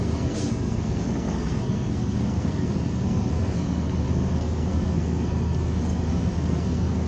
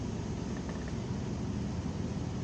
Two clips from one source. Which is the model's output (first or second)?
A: first